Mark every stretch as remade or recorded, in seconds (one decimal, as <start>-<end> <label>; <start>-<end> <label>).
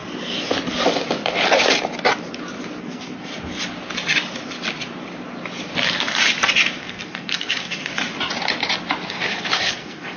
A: 0.0-2.8 recorded; 2.8-3.3 remade; 3.3-6.8 recorded; 6.8-7.9 remade; 7.9-9.1 recorded; 9.1-10.2 remade